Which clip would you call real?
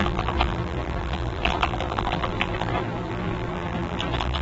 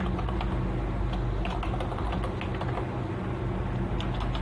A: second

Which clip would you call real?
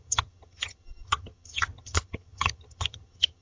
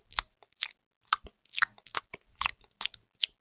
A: second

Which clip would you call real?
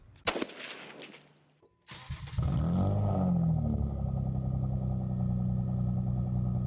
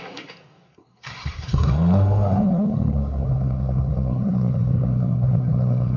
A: first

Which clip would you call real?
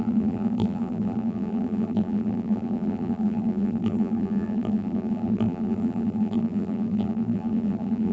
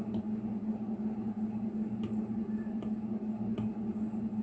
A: second